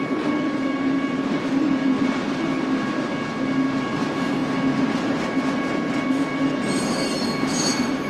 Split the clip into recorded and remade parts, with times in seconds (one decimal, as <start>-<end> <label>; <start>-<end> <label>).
0.0-2.5 remade; 2.5-3.8 recorded; 3.8-4.4 remade; 4.4-4.9 recorded; 4.9-8.1 remade